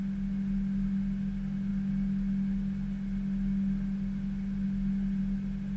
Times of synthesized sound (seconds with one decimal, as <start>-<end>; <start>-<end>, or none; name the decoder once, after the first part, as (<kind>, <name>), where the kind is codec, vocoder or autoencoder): none